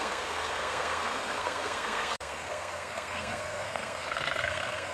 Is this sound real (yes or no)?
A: no